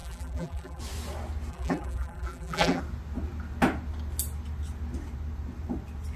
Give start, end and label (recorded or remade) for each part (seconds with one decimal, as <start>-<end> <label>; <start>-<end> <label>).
0.0-0.8 remade; 0.8-1.5 recorded; 1.5-2.8 remade; 2.8-6.2 recorded